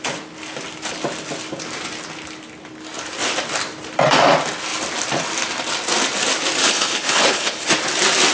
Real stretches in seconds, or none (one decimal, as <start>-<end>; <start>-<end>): 0.0-6.6; 7.7-8.3